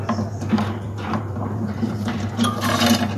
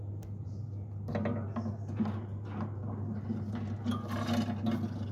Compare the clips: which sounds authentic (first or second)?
second